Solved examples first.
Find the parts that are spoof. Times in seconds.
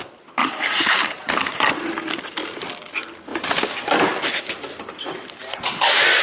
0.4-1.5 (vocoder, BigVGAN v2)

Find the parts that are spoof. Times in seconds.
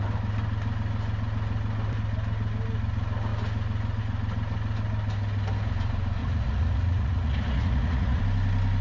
6.2-8.2 (vocoder, Vocos)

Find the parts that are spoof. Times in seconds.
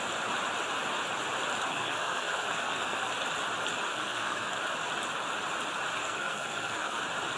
1.7-3.1 (codec, SNAC); 3.9-4.6; 6.0-7.0